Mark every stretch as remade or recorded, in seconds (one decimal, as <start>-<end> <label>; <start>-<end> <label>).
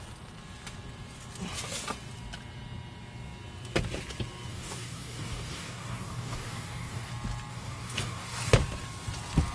0.0-4.5 recorded; 4.5-7.1 remade; 7.1-7.5 recorded; 7.5-8.5 remade; 8.5-9.5 recorded